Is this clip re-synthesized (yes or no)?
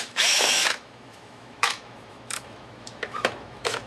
yes